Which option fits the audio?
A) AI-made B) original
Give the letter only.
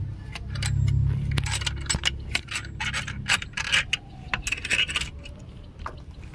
B